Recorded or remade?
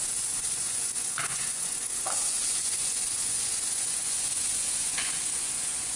remade